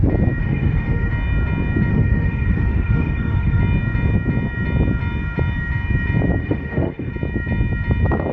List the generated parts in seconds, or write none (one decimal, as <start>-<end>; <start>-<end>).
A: 0.4-1.1; 1.9-3.6; 6.4-7.1